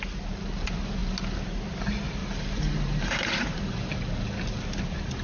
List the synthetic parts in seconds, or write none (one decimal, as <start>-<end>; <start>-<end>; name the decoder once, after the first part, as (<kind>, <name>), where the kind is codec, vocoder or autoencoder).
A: 2.2-3.9 (vocoder, BigVGAN v2)